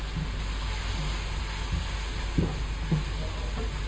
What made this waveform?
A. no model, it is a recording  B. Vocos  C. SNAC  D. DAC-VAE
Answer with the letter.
A